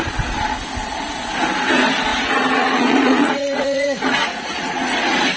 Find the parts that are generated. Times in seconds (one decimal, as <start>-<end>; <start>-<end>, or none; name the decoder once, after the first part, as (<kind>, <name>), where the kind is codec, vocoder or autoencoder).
2.1-5.4 (vocoder, Vocos)